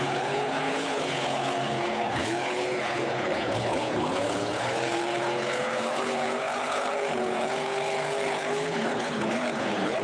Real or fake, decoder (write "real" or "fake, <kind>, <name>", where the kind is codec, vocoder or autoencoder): fake, codec, HILCodec